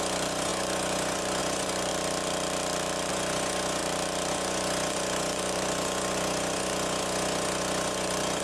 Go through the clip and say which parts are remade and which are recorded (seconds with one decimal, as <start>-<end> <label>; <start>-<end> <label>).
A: 0.0-1.9 remade; 1.9-3.1 recorded; 3.1-3.8 remade; 3.8-4.3 recorded; 4.3-8.4 remade